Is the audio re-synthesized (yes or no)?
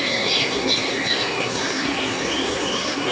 yes